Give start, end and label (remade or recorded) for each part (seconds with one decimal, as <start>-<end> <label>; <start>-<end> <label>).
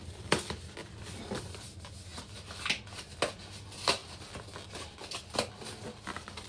0.0-6.5 recorded